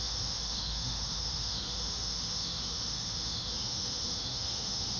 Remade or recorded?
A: remade